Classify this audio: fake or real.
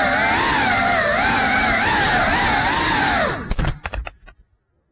real